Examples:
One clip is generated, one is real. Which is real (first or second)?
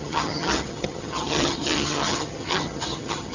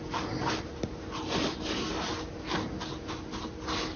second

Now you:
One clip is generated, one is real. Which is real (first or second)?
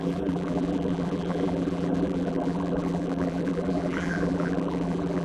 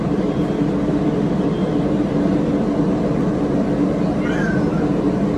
second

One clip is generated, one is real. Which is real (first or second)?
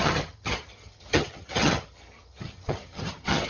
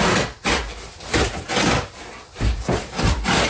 second